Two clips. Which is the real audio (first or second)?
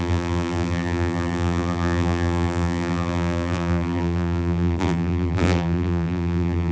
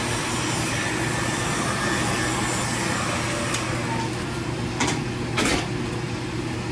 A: second